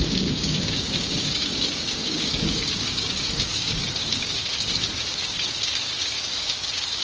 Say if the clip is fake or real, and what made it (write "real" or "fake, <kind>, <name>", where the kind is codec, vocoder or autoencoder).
fake, codec, DAC